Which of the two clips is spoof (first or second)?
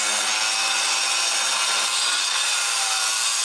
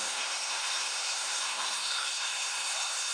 second